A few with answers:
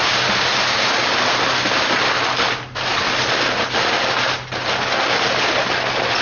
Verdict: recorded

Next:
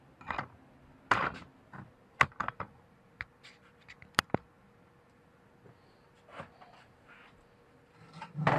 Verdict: recorded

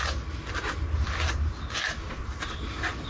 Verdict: recorded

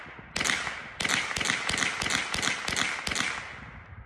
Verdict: recorded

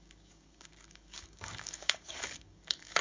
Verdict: remade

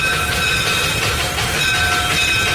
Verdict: recorded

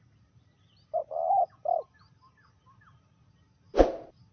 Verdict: recorded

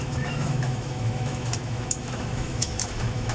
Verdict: remade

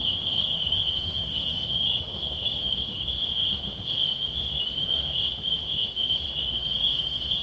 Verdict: remade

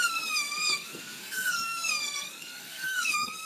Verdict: remade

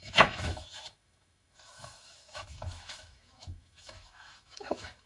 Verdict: remade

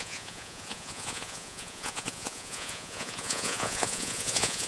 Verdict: remade